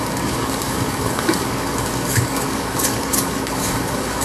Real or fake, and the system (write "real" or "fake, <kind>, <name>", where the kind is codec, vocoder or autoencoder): fake, codec, DAC